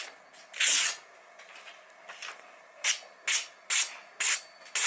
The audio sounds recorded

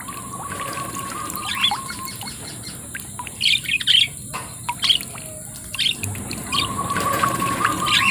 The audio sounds recorded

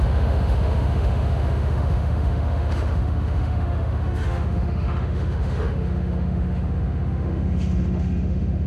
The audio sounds remade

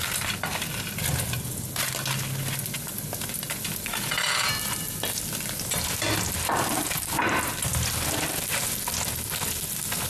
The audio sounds recorded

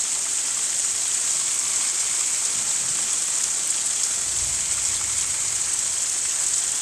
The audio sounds recorded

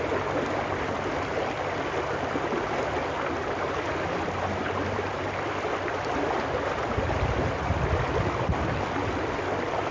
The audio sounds recorded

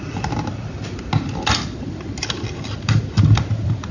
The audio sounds recorded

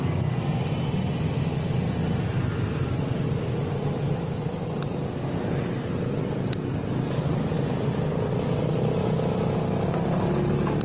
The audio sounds recorded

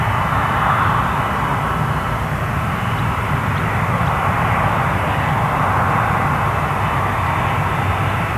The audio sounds recorded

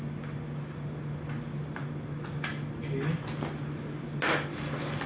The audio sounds recorded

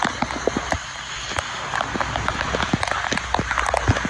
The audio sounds recorded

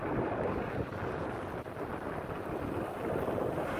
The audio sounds recorded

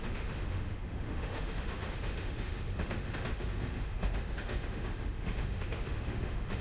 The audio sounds remade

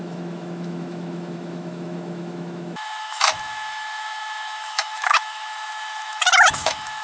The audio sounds remade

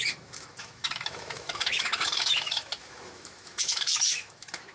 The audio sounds remade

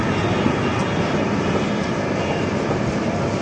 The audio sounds recorded